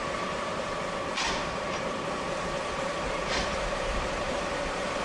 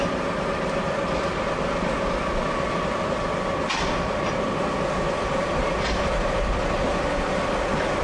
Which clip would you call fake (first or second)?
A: first